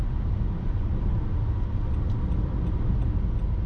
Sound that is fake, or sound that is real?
real